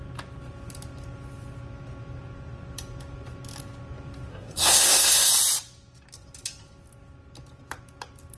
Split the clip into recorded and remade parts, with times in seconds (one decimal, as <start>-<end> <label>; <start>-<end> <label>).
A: 0.0-4.3 recorded; 4.3-5.3 remade; 5.3-8.4 recorded